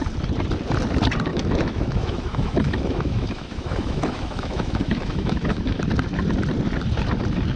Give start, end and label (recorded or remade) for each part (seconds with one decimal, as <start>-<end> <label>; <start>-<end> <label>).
0.0-1.3 recorded; 1.3-5.8 remade; 5.8-7.6 recorded